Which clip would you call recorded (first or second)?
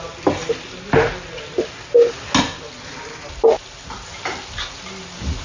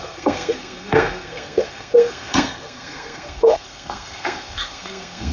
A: first